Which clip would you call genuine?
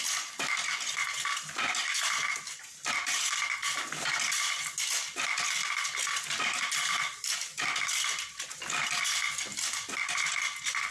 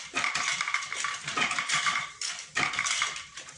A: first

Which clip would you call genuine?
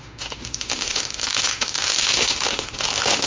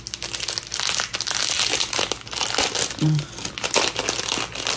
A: second